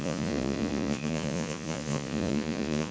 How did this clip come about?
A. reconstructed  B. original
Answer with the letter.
A